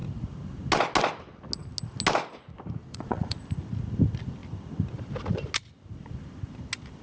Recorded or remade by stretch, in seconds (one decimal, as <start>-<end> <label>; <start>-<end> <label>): 0.0-2.8 recorded; 2.8-3.4 remade; 3.4-7.0 recorded